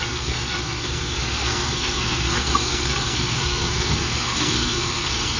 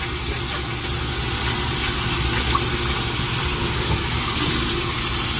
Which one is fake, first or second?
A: first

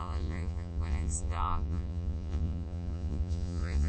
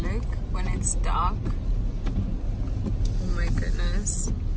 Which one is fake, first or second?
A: first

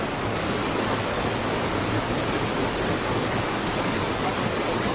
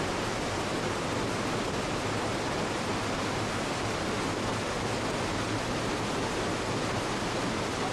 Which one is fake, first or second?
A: first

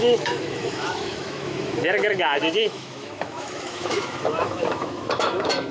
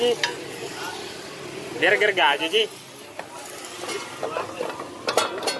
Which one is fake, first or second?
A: first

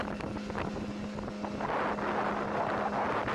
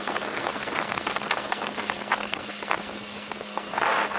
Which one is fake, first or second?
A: second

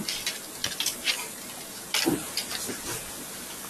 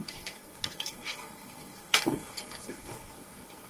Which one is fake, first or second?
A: second